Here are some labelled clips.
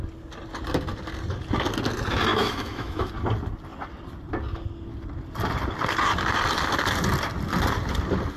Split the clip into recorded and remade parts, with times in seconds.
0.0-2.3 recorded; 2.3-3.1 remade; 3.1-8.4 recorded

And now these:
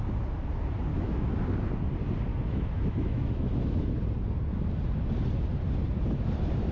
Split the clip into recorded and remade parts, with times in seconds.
0.0-0.9 recorded; 0.9-1.4 remade; 1.4-2.3 recorded; 2.3-4.0 remade; 4.0-6.7 recorded